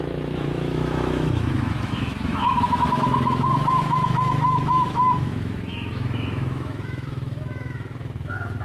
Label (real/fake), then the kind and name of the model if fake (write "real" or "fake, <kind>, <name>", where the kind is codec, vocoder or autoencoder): fake, autoencoder, DAC-VAE